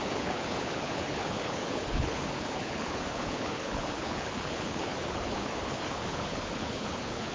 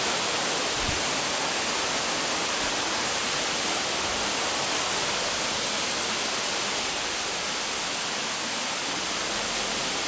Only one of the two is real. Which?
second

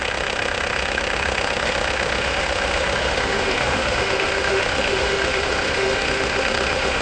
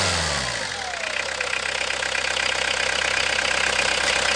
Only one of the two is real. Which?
second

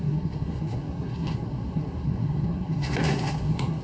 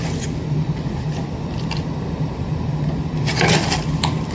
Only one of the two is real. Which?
second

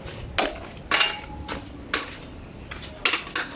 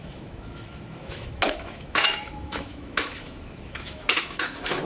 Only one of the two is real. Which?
first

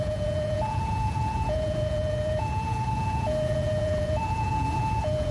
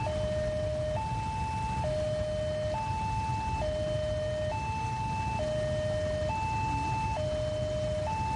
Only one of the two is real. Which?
second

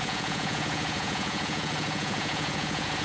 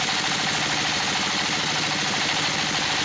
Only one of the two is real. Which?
second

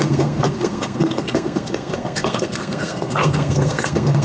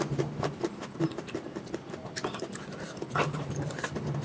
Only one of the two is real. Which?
second